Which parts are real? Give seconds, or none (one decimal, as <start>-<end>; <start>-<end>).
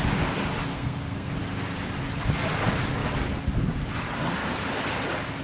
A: 0.0-0.7; 1.3-5.4